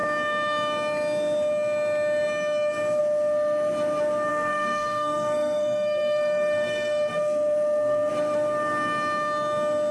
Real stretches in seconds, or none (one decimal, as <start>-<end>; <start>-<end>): 0.0-4.3; 8.1-9.9